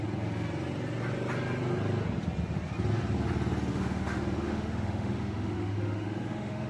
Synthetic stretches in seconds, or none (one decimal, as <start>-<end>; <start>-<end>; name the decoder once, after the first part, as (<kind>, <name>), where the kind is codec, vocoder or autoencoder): 3.7-6.7 (autoencoder, DAC-VAE)